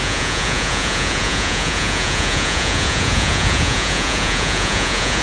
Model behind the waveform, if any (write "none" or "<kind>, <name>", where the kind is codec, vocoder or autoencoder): vocoder, Vocos